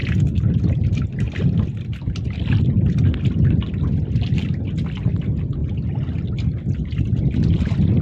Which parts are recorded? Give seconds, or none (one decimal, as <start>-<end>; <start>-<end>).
0.0-8.0

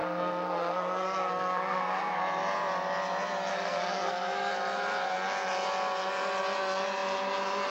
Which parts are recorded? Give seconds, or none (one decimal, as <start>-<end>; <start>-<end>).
2.2-3.5; 4.5-7.7

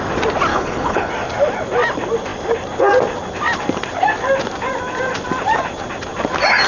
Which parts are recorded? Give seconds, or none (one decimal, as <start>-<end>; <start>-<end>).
0.0-0.5; 1.1-6.7

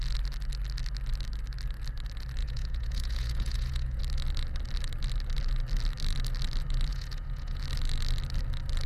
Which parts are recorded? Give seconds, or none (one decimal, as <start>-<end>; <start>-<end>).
0.0-2.4; 4.0-6.9; 7.6-8.9

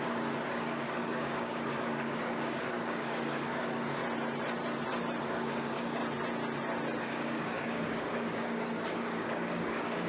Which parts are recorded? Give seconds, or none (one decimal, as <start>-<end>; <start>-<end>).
4.0-5.2; 6.0-7.0